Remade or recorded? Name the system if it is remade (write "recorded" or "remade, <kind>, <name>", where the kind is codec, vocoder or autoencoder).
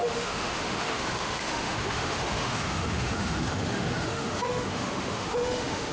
remade, autoencoder, DAC-VAE